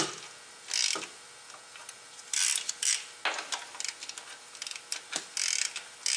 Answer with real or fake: real